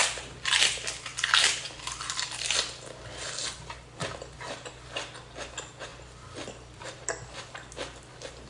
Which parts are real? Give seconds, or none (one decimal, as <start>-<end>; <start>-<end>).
3.3-5.9; 8.0-8.5